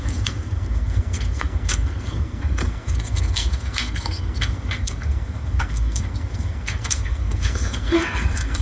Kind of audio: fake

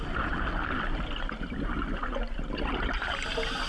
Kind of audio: real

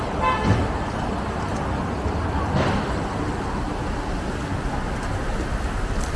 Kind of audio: real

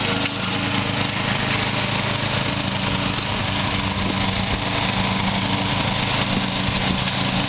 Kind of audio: real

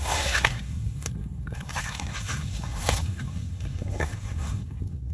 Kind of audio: fake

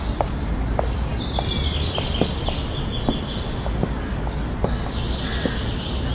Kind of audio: real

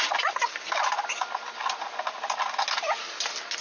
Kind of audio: real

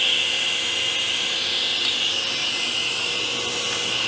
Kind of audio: real